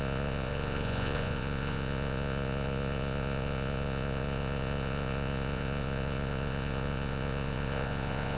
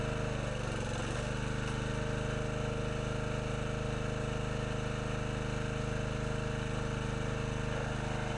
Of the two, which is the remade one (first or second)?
first